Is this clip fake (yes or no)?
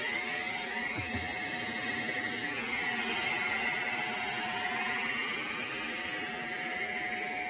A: no